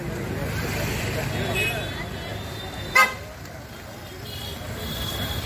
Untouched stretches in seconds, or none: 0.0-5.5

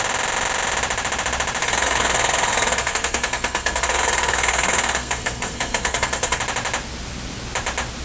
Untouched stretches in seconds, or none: 0.0-1.6; 6.4-8.0

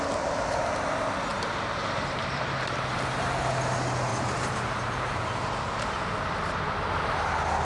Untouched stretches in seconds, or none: 0.0-1.3; 3.4-4.1; 5.1-7.6

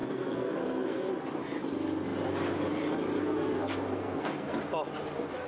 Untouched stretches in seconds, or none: 1.1-3.2; 4.6-5.5

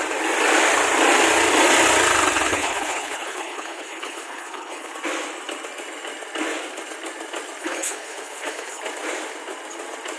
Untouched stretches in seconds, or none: 0.0-2.5; 4.9-7.6; 8.8-10.2